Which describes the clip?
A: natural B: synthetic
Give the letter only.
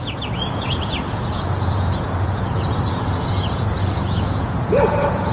B